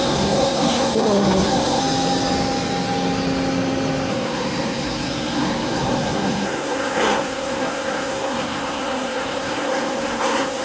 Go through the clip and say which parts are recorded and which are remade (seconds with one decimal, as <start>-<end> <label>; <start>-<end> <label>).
0.0-1.8 remade; 1.8-4.1 recorded; 4.1-10.6 remade